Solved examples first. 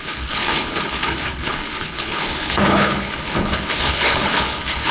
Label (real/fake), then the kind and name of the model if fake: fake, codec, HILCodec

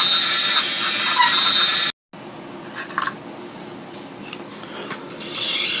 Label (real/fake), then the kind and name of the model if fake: real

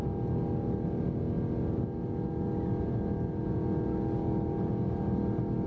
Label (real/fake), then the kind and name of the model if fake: real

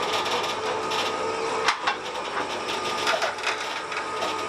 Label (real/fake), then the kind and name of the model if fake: real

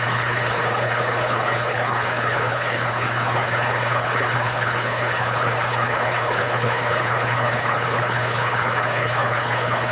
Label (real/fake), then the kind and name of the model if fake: fake, codec, HILCodec